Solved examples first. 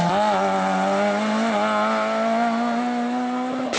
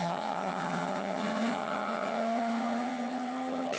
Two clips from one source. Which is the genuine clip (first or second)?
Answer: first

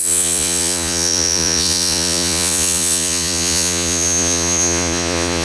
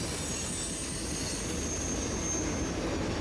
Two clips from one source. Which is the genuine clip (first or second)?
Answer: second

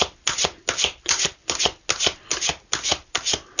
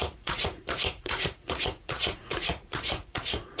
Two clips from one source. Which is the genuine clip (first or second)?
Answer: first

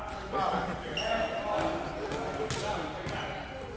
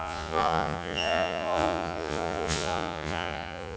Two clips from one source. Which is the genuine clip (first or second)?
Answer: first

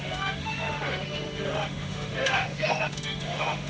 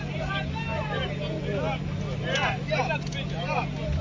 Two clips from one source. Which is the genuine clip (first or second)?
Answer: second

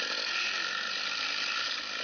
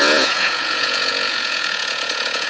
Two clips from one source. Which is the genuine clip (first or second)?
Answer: first